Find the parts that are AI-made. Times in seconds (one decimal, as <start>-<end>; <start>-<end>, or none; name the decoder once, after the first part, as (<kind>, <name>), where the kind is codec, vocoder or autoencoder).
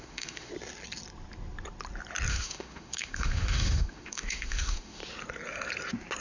0.0-0.5 (autoencoder, DAC-VAE); 2.3-5.0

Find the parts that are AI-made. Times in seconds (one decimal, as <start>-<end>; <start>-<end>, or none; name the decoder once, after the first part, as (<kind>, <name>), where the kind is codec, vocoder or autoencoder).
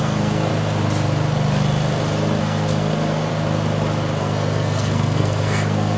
0.0-0.5 (codec, SNAC); 2.4-3.3; 4.2-6.0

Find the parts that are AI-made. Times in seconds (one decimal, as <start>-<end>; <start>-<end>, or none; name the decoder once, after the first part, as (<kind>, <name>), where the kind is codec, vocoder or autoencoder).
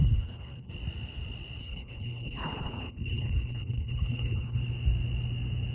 0.0-0.7 (codec, HILCodec); 1.6-4.6